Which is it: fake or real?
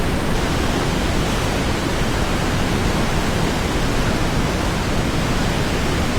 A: real